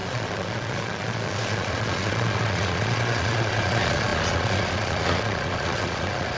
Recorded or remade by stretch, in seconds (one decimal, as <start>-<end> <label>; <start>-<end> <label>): 0.0-6.4 remade